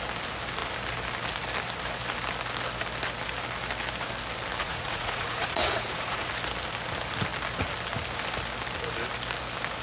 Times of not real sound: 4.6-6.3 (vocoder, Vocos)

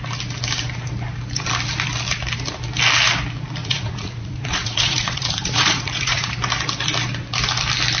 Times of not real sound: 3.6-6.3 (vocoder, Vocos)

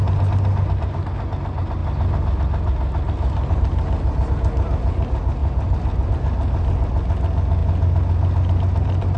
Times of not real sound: none

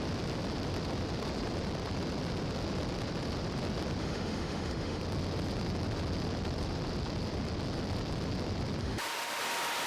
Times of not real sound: 4.0-5.0 (autoencoder, DAC-VAE); 8.8-9.4